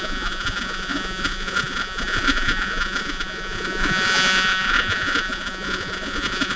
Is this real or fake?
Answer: fake